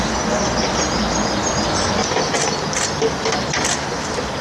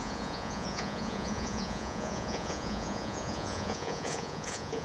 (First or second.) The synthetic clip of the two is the second